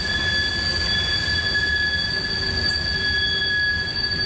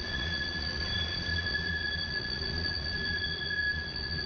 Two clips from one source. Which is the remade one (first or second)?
second